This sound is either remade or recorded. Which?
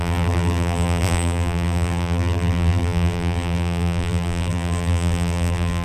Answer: remade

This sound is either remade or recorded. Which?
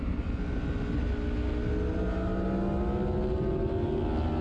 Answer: recorded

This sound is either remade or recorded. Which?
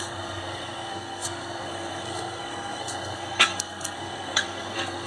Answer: remade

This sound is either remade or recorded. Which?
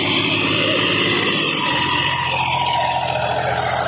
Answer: remade